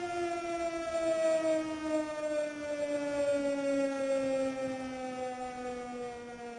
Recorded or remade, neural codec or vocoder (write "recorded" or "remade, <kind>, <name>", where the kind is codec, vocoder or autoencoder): recorded